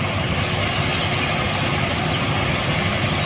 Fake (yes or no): no